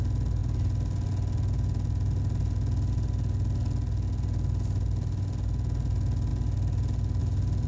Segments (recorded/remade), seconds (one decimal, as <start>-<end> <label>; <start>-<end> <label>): 0.0-7.7 recorded